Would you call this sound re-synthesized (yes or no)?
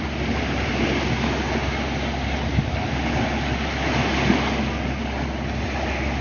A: no